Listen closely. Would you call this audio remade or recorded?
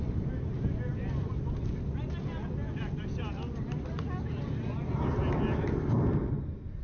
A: recorded